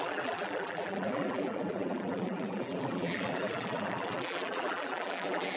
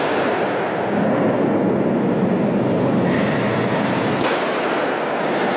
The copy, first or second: first